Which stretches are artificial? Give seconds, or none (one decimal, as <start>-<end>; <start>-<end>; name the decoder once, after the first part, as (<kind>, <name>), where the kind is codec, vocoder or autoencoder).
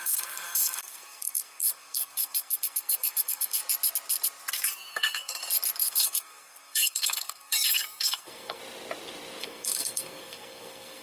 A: 0.0-3.6 (codec, SNAC); 4.5-5.4; 5.9-8.6; 9.4-11.0